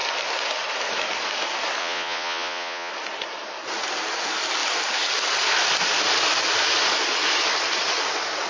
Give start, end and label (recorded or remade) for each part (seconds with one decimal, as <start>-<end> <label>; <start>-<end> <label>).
0.0-1.8 recorded; 1.8-2.9 remade; 2.9-8.5 recorded